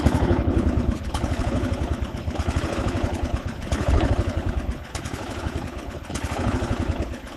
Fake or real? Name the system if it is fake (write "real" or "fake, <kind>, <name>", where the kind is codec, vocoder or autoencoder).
fake, codec, HILCodec